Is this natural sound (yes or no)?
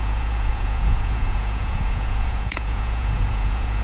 no